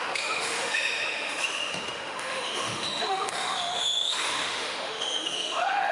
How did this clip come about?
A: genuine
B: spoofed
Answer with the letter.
B